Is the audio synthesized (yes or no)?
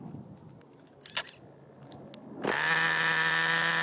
no